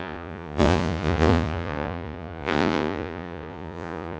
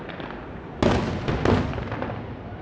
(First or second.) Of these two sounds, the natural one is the second